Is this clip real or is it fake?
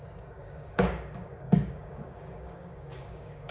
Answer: fake